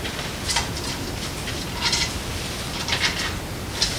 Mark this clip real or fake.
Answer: fake